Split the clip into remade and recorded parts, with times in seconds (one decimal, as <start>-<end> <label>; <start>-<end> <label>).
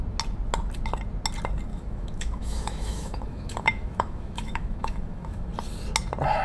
0.0-1.7 recorded; 1.7-5.5 remade; 5.5-6.4 recorded